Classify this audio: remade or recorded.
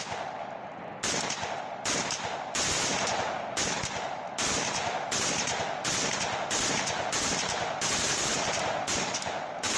recorded